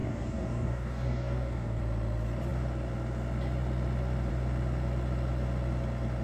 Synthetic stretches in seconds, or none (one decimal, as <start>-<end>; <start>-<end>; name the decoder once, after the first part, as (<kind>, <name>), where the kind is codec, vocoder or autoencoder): 0.0-1.8 (codec, DAC)